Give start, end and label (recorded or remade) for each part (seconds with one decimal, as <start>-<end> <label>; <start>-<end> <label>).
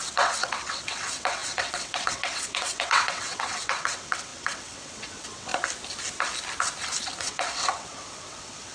0.0-5.5 remade; 5.5-7.2 recorded; 7.2-8.7 remade